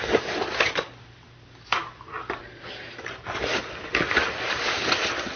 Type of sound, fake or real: real